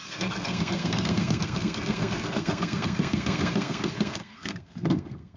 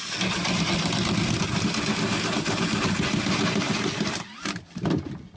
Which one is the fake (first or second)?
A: first